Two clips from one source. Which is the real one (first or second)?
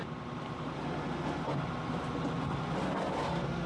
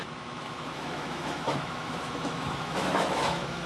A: first